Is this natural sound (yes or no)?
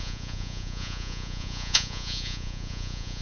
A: no